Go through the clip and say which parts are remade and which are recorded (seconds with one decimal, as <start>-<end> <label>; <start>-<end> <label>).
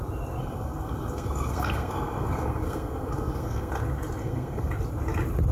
0.0-0.4 recorded; 0.4-3.7 remade; 3.7-4.2 recorded; 4.2-4.7 remade; 4.7-5.5 recorded